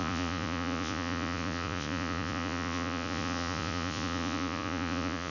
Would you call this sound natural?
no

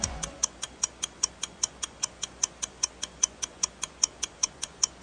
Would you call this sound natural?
no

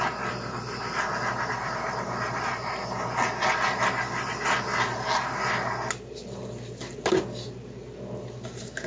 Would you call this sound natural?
yes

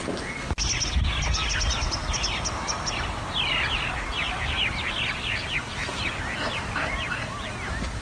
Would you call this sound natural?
yes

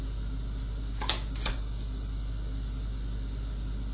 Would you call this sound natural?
yes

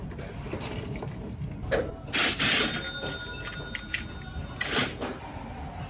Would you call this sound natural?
yes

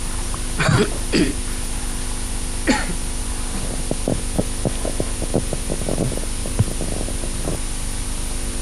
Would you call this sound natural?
yes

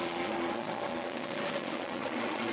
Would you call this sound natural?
no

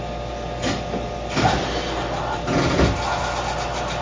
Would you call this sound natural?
yes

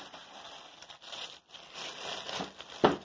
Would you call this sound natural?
yes